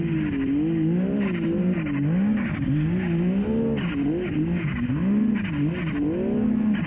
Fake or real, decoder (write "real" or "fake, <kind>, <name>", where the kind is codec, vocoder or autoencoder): real